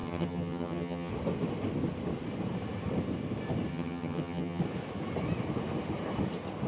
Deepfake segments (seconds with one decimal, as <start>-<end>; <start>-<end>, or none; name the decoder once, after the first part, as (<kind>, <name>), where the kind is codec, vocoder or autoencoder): 0.0-1.1 (vocoder, HiFi-GAN); 3.7-4.6